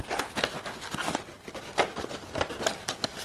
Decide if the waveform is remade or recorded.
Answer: recorded